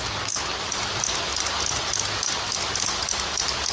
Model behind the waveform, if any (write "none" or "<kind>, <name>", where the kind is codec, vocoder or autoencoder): none